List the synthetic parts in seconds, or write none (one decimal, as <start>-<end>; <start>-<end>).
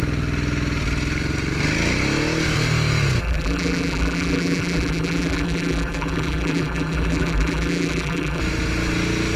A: 3.2-8.4